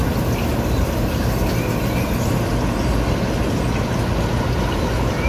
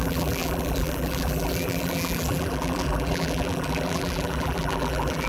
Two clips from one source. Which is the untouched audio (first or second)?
first